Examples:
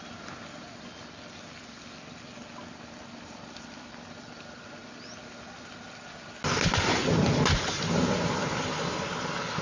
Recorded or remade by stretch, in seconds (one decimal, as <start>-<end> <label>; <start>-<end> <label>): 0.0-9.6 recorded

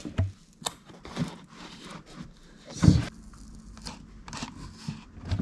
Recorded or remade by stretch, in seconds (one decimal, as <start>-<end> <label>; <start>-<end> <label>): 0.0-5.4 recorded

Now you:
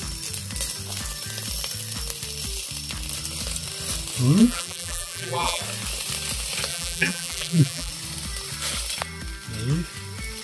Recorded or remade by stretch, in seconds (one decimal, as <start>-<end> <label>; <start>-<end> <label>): 0.0-4.4 recorded; 4.4-5.6 remade; 5.6-6.7 recorded; 6.7-7.9 remade; 7.9-10.4 recorded

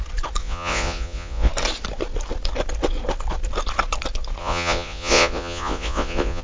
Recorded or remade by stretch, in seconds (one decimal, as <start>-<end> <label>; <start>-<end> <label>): 0.0-0.4 recorded; 0.4-1.5 remade; 1.5-4.4 recorded; 4.4-6.4 remade

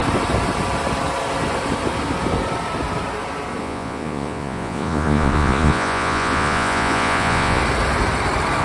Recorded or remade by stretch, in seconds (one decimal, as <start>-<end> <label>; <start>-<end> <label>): 0.0-3.6 recorded; 3.6-7.6 remade; 7.6-8.6 recorded